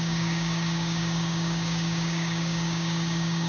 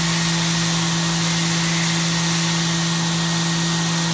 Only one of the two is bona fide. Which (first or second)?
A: second